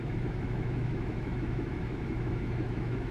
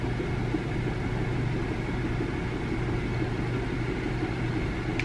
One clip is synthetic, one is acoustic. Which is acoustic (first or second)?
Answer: second